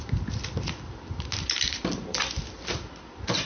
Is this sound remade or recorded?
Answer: recorded